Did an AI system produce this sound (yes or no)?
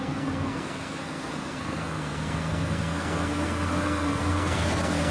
yes